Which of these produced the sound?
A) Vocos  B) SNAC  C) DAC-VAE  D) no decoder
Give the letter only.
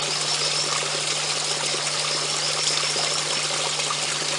D